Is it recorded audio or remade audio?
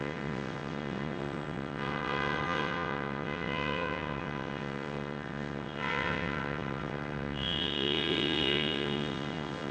remade